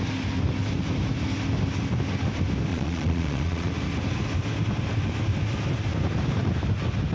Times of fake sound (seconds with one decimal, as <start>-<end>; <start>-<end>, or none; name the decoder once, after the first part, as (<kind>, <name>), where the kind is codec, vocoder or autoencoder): 2.7-3.7 (vocoder, Vocos)